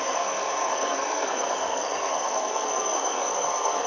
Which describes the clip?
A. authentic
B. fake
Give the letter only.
B